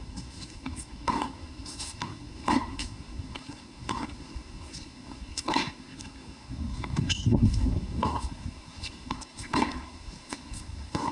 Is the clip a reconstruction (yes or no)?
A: yes